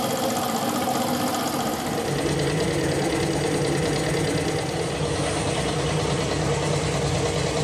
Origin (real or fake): real